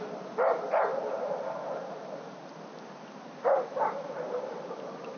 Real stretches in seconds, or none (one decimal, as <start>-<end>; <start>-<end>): 0.0-0.9; 3.9-5.2